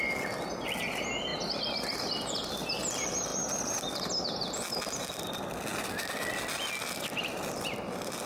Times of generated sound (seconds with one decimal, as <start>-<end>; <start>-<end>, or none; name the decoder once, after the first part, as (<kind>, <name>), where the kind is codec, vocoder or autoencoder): none